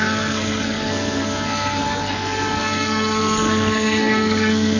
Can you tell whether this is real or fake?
fake